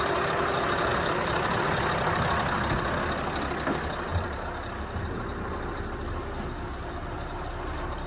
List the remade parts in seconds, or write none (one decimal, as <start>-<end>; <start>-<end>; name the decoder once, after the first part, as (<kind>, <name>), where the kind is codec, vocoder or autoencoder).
none